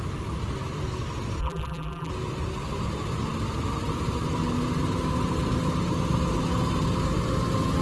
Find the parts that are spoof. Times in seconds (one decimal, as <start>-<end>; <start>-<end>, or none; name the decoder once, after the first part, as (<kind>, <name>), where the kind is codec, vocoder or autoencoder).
1.4-2.1 (vocoder, BigVGAN v2)

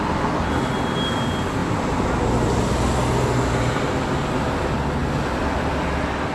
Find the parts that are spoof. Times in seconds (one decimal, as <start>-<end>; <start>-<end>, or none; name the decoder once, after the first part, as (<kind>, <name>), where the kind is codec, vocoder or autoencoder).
1.6-2.6 (vocoder, BigVGAN v2); 5.0-5.6

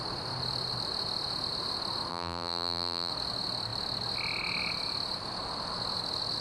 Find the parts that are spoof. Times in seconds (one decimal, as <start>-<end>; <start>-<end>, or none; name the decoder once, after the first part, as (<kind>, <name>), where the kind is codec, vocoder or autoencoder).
2.1-3.1 (vocoder, BigVGAN v2)

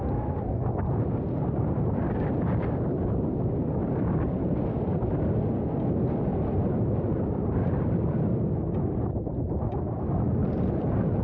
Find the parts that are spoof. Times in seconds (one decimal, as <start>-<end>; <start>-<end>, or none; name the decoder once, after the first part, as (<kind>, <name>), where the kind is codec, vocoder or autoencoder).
6.3-8.2 (vocoder, BigVGAN v2); 10.4-11.2

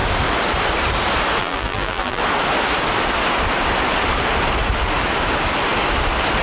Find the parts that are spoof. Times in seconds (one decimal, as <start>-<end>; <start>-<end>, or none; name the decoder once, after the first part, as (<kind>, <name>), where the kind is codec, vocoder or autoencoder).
1.4-2.2 (vocoder, BigVGAN v2)

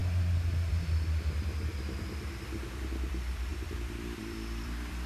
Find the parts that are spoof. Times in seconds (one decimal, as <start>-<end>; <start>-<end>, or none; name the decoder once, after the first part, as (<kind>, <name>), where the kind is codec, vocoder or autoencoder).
3.1-5.1 (vocoder, BigVGAN v2)

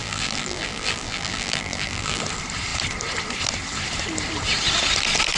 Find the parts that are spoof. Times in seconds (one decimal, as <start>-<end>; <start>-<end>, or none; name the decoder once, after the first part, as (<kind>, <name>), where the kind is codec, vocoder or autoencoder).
0.0-2.2 (vocoder, BigVGAN v2)

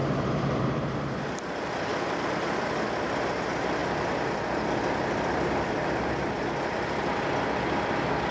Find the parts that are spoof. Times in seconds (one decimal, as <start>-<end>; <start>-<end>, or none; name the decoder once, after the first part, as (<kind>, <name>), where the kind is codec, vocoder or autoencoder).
0.0-1.2 (vocoder, BigVGAN v2)